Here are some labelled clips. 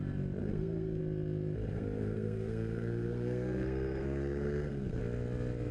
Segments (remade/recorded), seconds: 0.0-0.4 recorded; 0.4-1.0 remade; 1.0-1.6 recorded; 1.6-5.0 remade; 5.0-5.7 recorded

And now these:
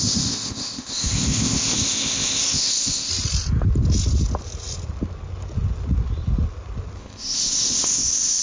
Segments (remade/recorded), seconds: 0.0-3.1 remade; 3.1-7.0 recorded; 7.0-8.4 remade

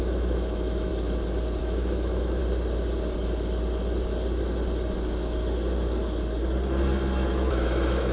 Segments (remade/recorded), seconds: 0.0-0.9 remade; 0.9-1.6 recorded; 1.6-2.4 remade; 2.4-7.3 recorded; 7.3-8.1 remade

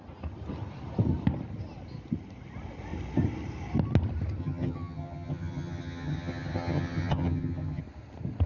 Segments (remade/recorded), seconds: 0.0-4.4 recorded; 4.4-7.8 remade; 7.8-8.5 recorded